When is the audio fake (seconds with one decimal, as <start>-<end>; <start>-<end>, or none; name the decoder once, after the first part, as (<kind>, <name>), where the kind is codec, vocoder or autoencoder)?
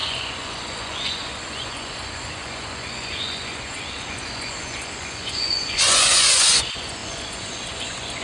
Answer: 0.0-8.2 (vocoder, Vocos)